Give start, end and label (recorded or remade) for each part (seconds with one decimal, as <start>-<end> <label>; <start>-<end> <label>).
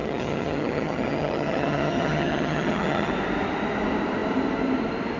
0.0-3.1 remade; 3.1-5.2 recorded